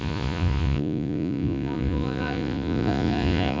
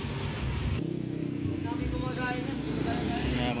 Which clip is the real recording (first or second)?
second